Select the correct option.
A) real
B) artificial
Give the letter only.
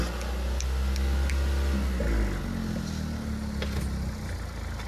A